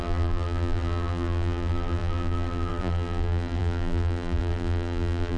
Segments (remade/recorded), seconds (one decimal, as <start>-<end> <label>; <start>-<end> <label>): 0.0-5.4 remade